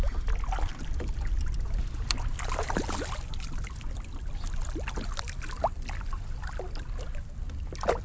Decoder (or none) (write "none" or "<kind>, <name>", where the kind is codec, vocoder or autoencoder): none